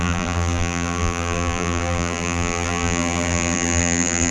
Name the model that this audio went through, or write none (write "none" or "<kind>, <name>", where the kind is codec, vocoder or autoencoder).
vocoder, BigVGAN v2